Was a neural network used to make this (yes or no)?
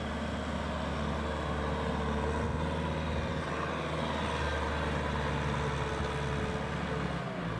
no